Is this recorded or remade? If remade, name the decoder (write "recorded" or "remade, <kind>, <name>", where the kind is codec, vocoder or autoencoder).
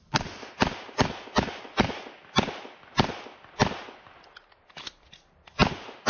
recorded